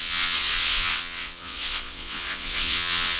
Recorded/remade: remade